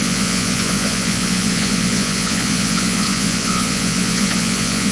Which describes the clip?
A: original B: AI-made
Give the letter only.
B